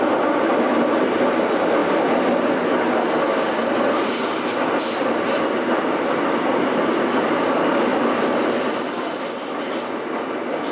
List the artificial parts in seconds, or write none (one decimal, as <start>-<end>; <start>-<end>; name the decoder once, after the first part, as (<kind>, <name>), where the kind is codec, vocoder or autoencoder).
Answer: none

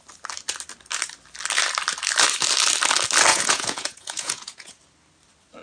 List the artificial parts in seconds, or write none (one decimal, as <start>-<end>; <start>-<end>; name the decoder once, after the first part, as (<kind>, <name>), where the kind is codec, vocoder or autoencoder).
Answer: 3.3-4.8 (vocoder, Vocos)

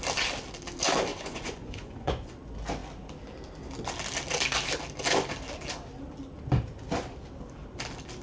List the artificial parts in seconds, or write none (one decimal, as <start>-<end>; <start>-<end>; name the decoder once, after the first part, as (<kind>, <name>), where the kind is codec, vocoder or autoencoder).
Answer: 1.1-2.3 (vocoder, Vocos)

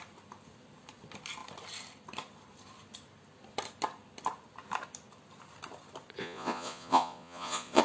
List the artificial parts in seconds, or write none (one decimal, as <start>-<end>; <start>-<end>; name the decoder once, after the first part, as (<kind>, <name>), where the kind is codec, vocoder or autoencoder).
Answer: 6.2-7.8 (vocoder, Vocos)

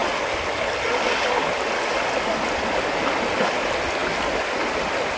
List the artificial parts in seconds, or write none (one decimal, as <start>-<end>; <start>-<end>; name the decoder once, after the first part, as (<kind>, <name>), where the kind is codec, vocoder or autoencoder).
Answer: none

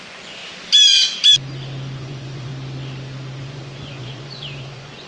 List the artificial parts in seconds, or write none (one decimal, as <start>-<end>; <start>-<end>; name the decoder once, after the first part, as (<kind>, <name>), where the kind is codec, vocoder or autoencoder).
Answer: 0.0-0.4 (vocoder, Vocos); 2.0-2.5; 3.4-5.1

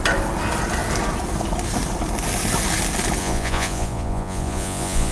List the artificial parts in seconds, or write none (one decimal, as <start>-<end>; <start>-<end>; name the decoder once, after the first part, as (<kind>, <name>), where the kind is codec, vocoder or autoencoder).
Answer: 3.2-5.1 (vocoder, Vocos)

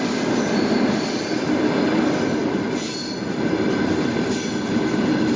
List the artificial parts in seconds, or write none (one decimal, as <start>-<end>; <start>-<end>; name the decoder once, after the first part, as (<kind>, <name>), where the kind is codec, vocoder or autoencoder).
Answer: none